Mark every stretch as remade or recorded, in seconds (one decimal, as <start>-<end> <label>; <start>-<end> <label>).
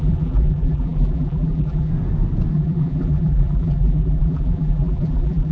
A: 0.0-1.9 remade; 1.9-2.5 recorded; 2.5-5.5 remade